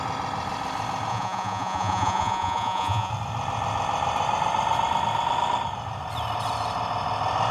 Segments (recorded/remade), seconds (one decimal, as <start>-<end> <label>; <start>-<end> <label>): 0.0-1.1 recorded; 1.1-3.1 remade; 3.1-7.5 recorded